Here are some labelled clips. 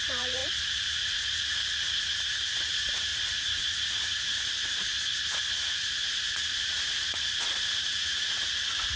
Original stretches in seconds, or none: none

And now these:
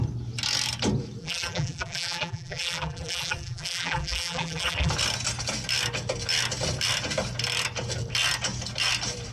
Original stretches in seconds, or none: 0.0-1.2; 4.9-9.3

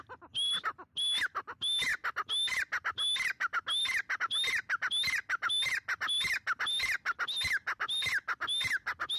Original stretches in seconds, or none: 0.0-9.2

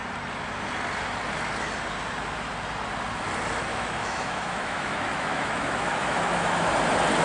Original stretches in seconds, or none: 0.0-3.7; 6.7-7.2

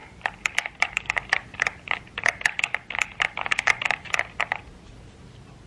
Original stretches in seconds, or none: 1.0-5.7